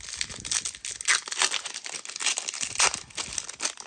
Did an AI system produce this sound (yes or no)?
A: no